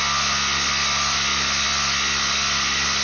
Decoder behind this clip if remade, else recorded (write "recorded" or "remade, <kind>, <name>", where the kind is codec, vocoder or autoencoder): recorded